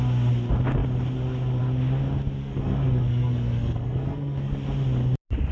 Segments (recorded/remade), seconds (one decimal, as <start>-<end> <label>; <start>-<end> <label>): 0.0-2.4 recorded; 2.4-4.5 remade; 4.5-5.5 recorded